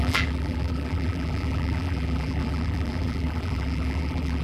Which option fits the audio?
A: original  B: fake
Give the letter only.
B